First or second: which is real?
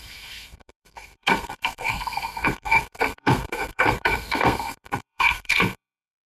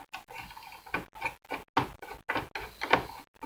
second